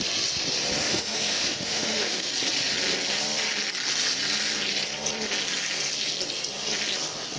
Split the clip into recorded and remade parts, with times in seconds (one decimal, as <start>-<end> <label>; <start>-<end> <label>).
0.0-0.8 recorded; 0.8-2.3 remade; 2.3-7.4 recorded